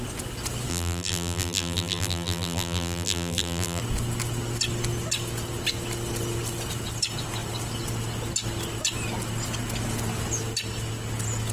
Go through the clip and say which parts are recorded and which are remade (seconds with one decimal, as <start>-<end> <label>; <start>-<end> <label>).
0.0-0.7 recorded; 0.7-3.8 remade; 3.8-11.5 recorded